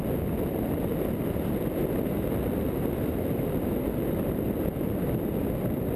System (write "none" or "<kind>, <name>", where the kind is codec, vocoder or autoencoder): vocoder, BigVGAN v2